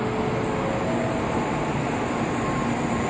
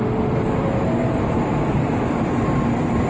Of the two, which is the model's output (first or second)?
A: second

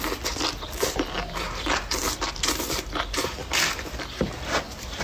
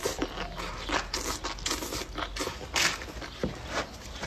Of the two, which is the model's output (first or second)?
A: first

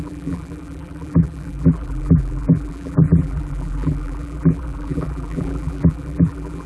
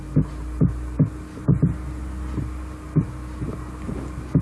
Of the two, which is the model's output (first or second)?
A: first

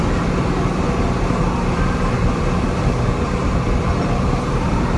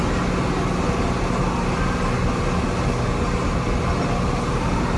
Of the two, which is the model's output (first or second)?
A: first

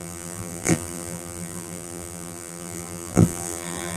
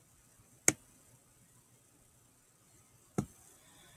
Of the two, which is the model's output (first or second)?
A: first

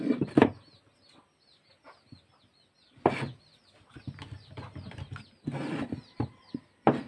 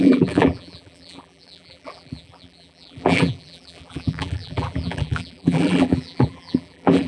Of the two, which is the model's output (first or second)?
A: second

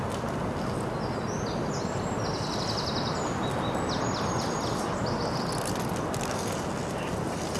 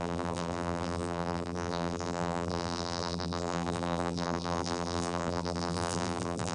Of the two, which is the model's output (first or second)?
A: second